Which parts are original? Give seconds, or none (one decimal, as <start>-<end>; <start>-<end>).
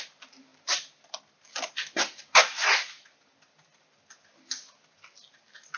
0.0-5.8